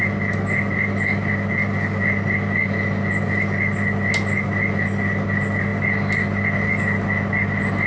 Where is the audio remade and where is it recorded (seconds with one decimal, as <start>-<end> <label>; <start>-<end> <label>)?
0.0-7.9 recorded